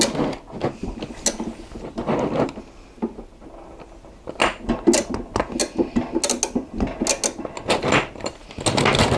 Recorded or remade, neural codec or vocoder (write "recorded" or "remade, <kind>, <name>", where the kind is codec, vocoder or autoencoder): recorded